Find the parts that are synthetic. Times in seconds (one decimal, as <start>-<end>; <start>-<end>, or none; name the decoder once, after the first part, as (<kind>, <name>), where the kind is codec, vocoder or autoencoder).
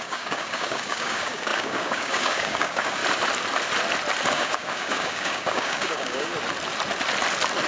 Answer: 0.0-3.0 (codec, DAC); 4.3-6.3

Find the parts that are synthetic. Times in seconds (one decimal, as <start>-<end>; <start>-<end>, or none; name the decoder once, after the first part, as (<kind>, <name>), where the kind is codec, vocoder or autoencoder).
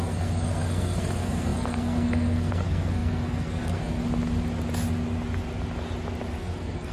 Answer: 0.0-4.0 (codec, SNAC); 6.4-6.9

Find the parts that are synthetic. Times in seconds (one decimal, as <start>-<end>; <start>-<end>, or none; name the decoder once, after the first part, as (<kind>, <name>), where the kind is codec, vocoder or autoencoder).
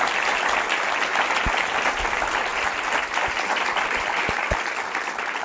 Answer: none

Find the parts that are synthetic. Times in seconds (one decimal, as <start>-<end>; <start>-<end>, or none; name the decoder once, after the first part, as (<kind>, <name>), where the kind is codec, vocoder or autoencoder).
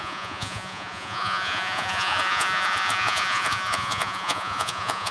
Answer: 0.0-5.1 (vocoder, Vocos)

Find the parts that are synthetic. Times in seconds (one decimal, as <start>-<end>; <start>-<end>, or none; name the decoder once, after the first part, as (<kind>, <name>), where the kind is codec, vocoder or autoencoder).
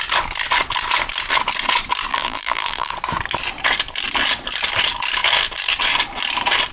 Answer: 2.1-2.9 (vocoder, BigVGAN v2)